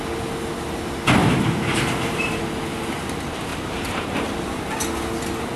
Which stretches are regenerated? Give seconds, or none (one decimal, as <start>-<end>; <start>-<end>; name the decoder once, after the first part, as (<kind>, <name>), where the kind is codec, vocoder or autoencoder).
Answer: 1.2-2.4 (vocoder, BigVGAN v2); 3.5-4.6